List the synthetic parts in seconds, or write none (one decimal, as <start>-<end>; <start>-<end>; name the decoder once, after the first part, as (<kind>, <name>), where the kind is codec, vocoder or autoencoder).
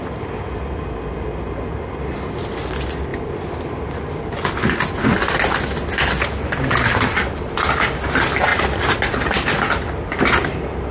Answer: none